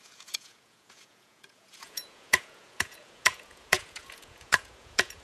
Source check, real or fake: fake